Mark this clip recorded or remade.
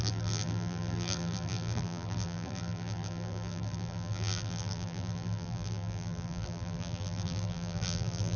remade